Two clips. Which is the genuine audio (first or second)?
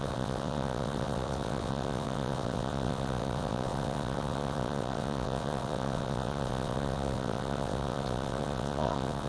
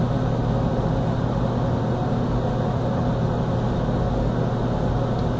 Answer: second